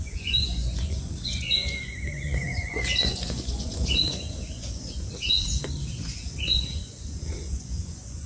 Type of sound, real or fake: fake